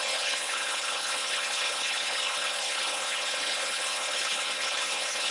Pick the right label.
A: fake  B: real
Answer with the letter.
A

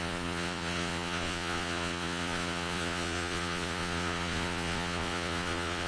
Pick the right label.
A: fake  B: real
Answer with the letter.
A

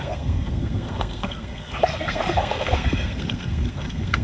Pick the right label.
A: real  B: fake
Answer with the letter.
B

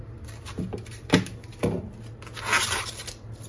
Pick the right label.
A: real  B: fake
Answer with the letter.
A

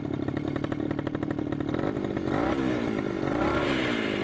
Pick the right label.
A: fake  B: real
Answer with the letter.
B